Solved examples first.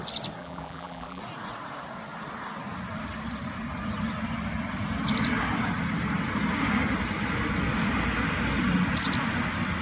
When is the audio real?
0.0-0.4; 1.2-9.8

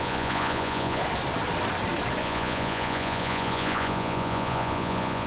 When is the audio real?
1.0-2.2

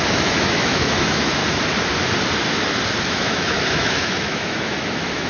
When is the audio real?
1.4-3.1

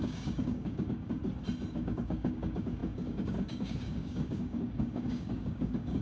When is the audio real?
1.2-1.7

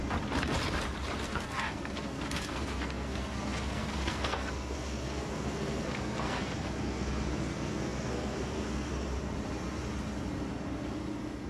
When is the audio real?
0.0-1.2; 8.9-11.5

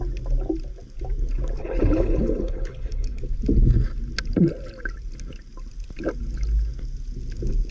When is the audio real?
0.0-1.6; 3.2-7.7

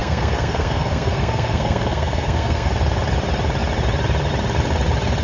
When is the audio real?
2.7-5.2